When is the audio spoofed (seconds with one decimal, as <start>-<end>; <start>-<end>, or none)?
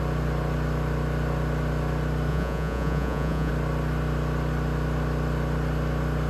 2.3-3.5